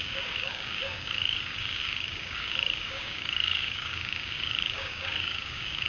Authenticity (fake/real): fake